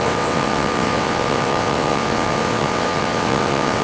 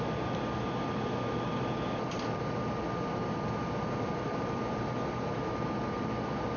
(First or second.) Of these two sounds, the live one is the second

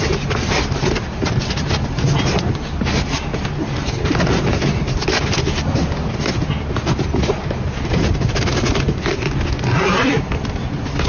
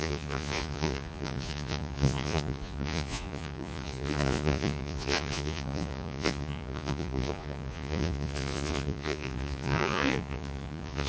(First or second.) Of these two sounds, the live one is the first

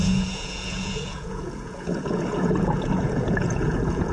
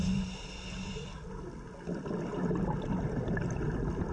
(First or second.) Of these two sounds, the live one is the second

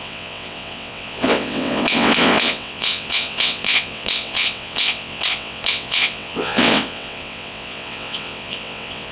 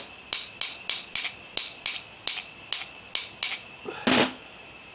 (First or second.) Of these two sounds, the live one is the second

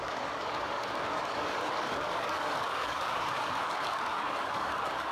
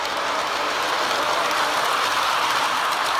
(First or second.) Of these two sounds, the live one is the second